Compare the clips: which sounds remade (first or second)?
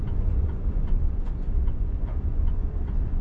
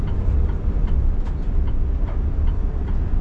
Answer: first